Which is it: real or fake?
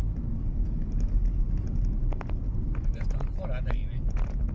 real